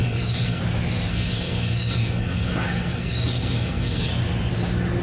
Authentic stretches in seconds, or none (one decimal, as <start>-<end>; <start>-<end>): 0.6-1.1; 4.1-5.0